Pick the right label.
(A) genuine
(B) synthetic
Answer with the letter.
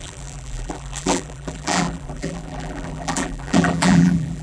B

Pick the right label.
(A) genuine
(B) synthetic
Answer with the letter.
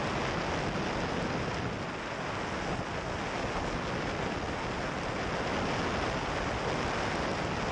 A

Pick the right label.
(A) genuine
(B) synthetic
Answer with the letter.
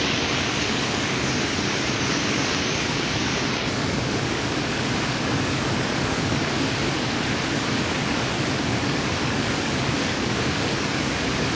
B